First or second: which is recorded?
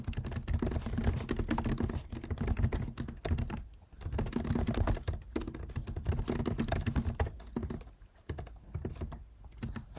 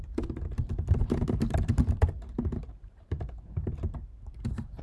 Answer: first